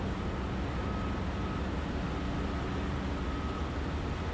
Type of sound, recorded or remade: recorded